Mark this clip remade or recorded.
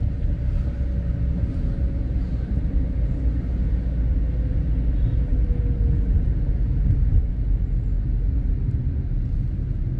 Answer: recorded